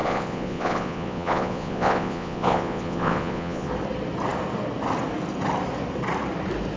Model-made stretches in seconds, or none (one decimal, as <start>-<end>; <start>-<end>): 0.0-3.7